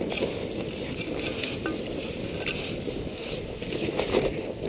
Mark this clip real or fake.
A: real